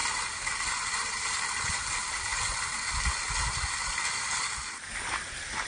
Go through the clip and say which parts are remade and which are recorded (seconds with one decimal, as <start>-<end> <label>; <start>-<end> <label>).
0.0-5.7 recorded